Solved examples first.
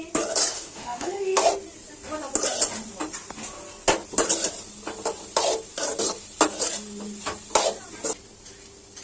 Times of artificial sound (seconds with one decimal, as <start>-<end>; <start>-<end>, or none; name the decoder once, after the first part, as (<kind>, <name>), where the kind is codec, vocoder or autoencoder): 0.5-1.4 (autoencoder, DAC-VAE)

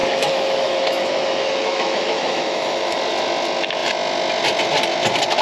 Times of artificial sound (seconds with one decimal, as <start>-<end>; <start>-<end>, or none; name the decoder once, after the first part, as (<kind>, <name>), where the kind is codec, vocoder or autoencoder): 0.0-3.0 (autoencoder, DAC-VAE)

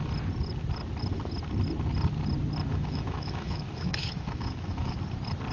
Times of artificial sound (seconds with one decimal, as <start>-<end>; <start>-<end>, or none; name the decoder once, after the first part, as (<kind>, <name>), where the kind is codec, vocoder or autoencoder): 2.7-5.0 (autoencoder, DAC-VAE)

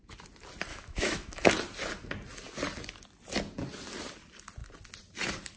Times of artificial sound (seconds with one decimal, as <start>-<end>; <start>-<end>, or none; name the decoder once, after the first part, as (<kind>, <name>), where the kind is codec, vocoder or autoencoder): 0.7-1.5 (autoencoder, DAC-VAE)